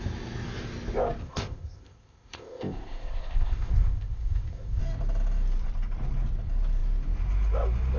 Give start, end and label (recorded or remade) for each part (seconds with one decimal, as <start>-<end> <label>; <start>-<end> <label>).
0.0-1.2 recorded; 1.2-4.8 remade; 4.8-8.0 recorded